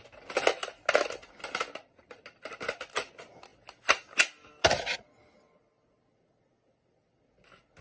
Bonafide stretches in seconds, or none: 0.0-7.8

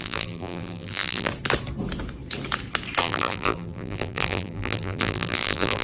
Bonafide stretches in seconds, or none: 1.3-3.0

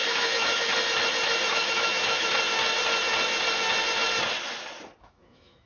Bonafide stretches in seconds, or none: 0.7-1.5; 2.3-5.0

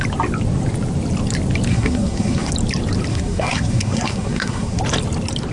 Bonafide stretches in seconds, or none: 0.0-1.7; 2.5-3.1; 4.8-5.5

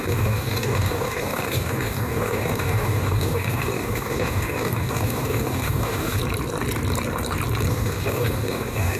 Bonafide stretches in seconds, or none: 6.2-7.7